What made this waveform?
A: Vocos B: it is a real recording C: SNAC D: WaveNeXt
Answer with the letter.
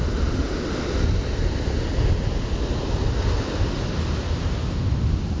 B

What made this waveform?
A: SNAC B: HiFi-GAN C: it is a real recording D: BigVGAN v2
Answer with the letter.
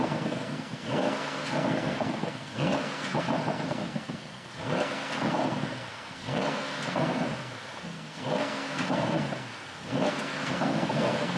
A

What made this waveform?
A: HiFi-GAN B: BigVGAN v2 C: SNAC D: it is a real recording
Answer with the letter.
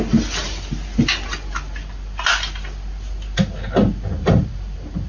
D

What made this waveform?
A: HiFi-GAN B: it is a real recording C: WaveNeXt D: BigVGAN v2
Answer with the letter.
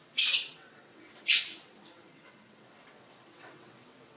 C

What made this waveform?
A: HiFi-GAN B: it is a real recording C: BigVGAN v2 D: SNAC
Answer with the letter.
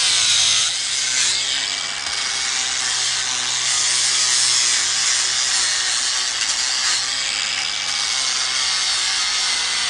B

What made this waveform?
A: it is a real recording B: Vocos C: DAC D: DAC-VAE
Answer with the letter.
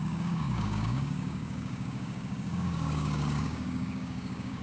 C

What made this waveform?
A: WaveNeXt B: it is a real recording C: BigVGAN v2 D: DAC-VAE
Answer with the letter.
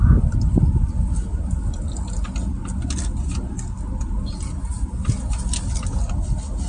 B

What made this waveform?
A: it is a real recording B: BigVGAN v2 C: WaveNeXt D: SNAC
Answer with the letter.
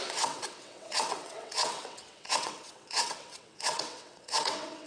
C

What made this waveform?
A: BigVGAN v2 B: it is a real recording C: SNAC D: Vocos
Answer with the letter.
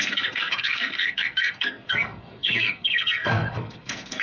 C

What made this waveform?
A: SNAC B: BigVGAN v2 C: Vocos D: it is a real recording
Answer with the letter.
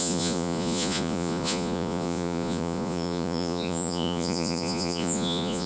C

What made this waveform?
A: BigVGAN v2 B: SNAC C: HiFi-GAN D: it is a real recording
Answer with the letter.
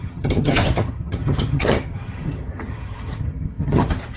C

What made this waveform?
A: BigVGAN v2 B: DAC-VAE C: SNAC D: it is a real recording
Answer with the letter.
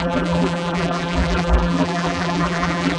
A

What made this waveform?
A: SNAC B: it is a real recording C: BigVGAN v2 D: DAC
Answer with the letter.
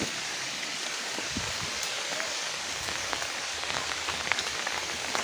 D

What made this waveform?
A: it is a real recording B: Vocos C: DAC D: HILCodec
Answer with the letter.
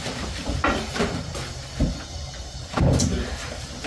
A